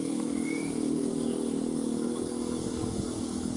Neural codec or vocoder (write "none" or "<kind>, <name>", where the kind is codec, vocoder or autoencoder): codec, DAC